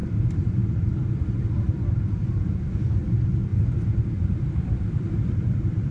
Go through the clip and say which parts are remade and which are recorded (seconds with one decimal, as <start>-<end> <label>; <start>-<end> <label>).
0.0-2.9 recorded; 2.9-5.9 remade